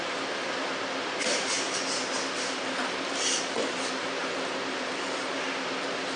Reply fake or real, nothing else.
fake